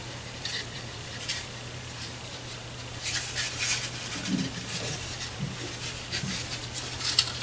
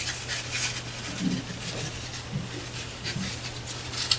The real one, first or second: second